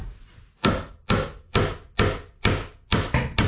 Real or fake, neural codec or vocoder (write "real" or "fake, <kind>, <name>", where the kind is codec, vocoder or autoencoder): real